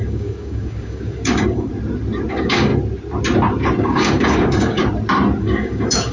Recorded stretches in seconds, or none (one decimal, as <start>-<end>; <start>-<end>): 1.7-2.3; 2.7-3.8; 4.8-5.4